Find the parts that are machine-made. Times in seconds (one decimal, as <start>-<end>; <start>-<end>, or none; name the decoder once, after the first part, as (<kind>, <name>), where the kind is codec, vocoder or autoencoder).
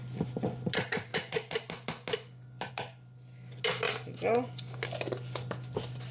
none